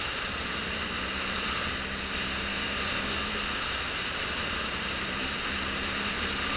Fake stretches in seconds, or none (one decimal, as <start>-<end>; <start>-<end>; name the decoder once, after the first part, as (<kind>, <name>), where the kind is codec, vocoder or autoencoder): 2.5-3.3 (codec, DAC)